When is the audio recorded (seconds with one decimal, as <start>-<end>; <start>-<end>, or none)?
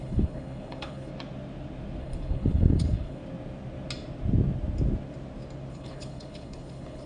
1.1-2.0; 3.2-5.7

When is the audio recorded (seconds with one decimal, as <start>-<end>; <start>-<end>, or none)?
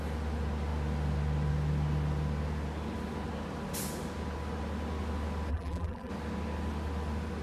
0.0-5.5; 6.1-7.4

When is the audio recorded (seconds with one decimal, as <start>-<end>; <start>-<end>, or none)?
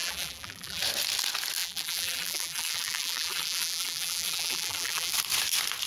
0.8-1.6; 5.1-5.9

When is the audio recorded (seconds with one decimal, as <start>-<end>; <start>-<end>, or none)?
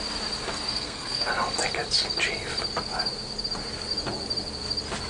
0.0-0.7; 1.3-5.1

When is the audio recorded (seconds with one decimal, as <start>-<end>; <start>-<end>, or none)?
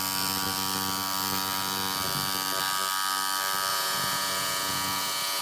0.0-3.7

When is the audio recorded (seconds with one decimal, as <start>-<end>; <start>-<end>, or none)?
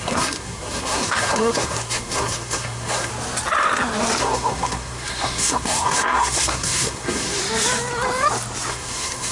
3.1-4.2; 7.4-8.7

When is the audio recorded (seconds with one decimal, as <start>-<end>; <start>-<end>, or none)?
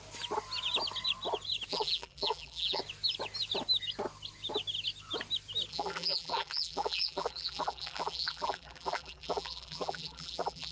0.0-1.7; 2.8-5.7